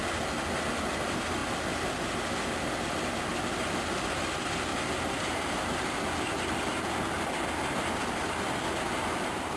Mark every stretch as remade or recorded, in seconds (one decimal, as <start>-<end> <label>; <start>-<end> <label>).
0.0-9.6 recorded